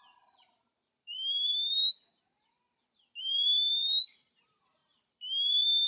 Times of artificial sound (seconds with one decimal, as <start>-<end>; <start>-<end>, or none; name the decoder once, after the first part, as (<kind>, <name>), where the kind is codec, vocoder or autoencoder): 0.0-1.8 (vocoder, BigVGAN v2); 3.2-5.9